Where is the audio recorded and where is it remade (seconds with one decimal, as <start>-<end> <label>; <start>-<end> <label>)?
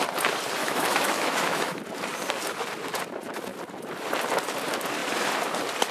0.0-0.6 recorded; 0.6-1.8 remade; 1.8-5.9 recorded